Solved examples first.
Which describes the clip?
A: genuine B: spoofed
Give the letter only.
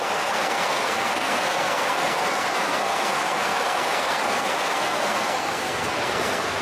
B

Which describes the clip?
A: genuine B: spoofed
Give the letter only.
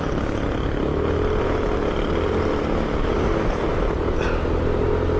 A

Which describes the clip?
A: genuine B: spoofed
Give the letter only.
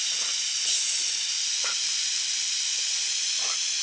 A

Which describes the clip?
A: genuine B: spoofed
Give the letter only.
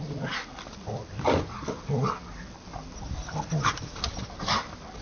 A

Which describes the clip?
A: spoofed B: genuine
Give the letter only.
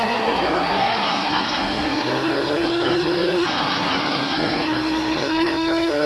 A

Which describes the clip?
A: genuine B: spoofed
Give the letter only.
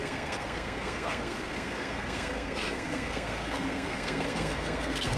B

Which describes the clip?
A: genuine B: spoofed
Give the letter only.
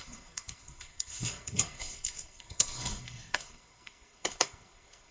B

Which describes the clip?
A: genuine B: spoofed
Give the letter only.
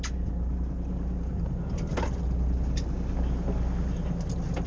A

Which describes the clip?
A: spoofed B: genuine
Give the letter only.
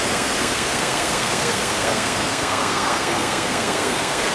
A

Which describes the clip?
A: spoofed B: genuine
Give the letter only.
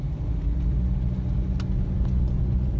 B